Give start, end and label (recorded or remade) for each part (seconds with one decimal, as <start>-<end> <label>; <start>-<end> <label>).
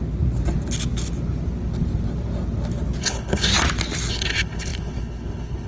0.0-3.0 recorded; 3.0-3.5 remade; 3.5-4.1 recorded; 4.1-5.7 remade